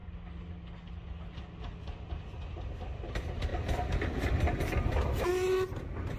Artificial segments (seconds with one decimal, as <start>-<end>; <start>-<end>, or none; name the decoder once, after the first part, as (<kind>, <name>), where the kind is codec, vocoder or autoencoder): none